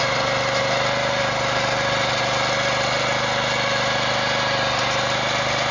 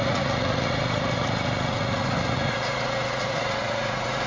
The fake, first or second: second